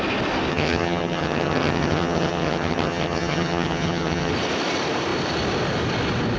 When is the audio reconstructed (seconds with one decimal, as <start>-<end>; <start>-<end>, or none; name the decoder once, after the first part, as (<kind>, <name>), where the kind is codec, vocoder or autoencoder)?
0.5-4.3 (vocoder, HiFi-GAN)